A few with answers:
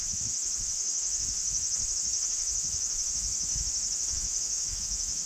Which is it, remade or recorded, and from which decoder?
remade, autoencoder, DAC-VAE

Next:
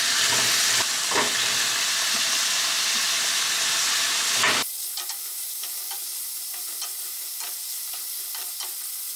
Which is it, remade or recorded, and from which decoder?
recorded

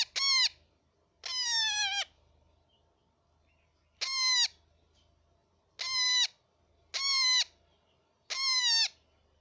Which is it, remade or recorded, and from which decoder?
recorded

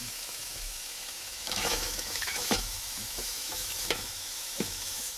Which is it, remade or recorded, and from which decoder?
remade, autoencoder, DAC-VAE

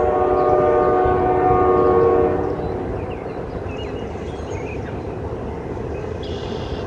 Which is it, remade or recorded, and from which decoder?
recorded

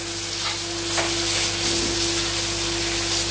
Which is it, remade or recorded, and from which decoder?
recorded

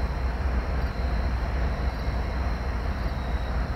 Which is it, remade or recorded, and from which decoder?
recorded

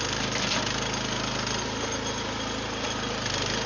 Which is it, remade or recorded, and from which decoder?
recorded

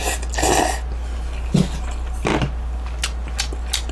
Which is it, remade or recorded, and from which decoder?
recorded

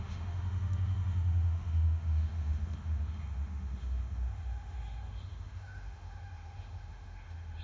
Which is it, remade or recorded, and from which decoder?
remade, autoencoder, DAC-VAE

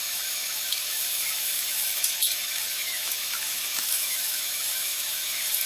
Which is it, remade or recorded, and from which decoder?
remade, autoencoder, DAC-VAE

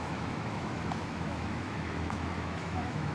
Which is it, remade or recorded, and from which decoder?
remade, autoencoder, DAC-VAE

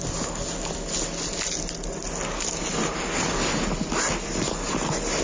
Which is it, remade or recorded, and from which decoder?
recorded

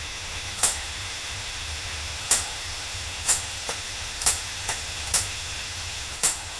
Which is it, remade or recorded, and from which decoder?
remade, autoencoder, DAC-VAE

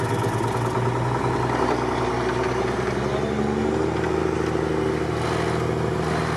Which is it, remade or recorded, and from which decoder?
recorded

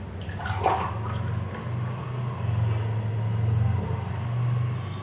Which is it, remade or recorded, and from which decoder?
recorded